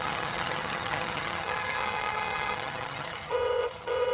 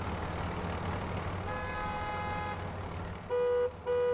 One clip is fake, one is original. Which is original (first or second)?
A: second